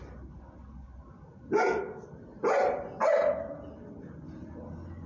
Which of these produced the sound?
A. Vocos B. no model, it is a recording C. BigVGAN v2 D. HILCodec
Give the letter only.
B